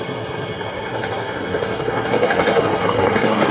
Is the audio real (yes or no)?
no